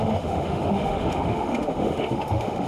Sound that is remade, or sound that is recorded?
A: remade